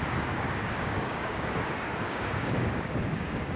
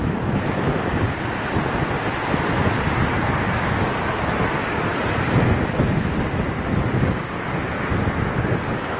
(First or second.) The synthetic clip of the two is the first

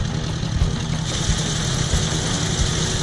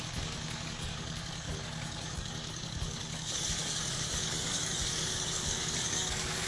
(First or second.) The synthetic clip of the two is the second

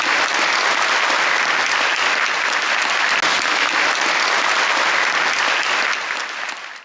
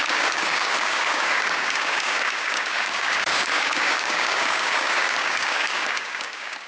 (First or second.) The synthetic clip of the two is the second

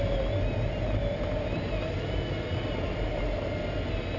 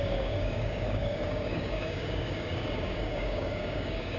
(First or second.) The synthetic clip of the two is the second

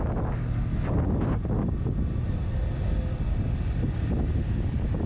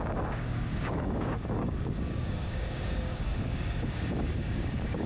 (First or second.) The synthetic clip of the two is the second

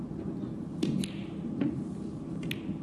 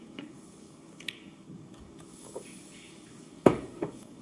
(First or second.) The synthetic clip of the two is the second